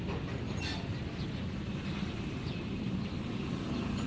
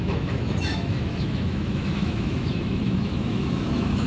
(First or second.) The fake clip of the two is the second